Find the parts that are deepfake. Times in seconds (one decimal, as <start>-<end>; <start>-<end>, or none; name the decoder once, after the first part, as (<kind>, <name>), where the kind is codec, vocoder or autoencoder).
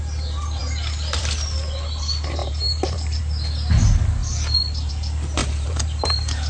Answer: 2.4-3.2 (vocoder, BigVGAN v2); 5.4-6.5